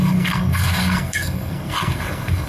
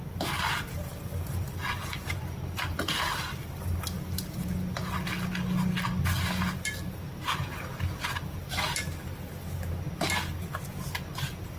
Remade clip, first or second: first